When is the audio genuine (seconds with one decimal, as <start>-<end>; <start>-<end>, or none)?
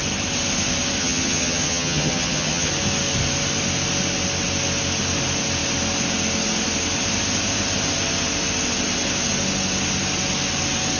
0.0-1.0; 2.7-11.0